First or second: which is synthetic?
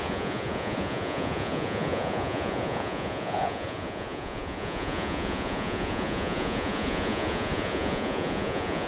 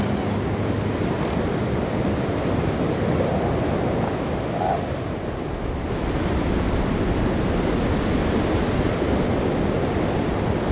first